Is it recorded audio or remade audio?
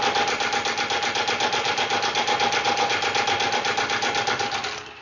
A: recorded